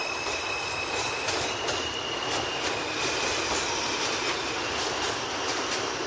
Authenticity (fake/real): real